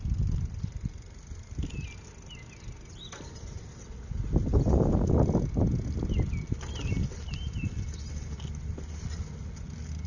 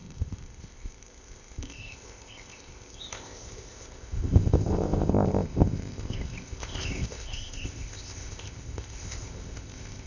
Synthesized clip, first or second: second